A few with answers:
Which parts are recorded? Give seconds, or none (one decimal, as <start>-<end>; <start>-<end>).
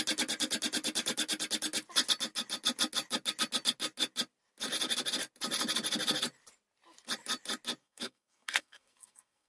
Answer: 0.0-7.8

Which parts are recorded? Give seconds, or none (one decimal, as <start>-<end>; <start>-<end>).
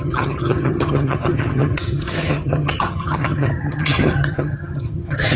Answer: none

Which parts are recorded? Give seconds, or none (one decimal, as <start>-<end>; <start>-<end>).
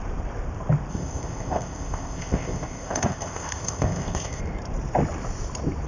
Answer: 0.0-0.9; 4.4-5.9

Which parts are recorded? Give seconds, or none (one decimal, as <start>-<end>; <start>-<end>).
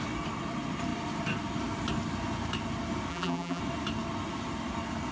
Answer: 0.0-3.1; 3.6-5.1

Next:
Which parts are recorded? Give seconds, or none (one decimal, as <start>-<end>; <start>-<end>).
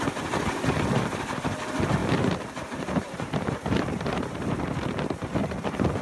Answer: 0.0-2.0; 4.8-6.0